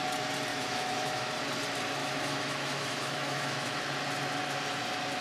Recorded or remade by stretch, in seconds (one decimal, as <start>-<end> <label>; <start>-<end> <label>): 0.0-0.5 recorded; 0.5-1.3 remade; 1.3-2.0 recorded; 2.0-3.8 remade; 3.8-5.2 recorded